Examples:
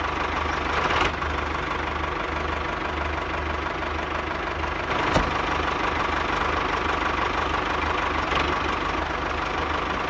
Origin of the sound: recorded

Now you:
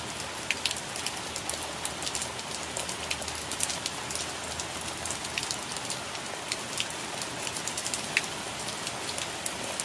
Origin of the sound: recorded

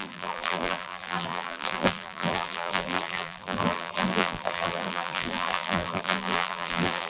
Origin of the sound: remade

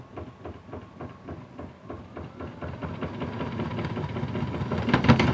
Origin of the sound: recorded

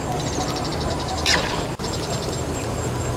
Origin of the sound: remade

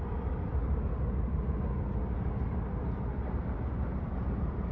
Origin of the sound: remade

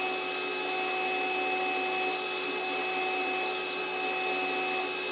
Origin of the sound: recorded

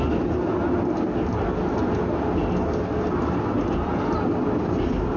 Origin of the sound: recorded